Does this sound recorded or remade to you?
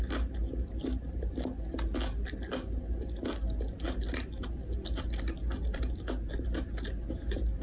recorded